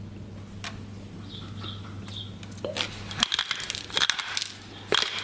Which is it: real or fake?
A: real